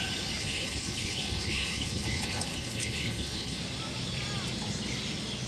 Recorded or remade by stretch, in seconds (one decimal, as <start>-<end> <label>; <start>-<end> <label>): 0.0-0.4 recorded; 0.4-3.6 remade; 3.6-5.5 recorded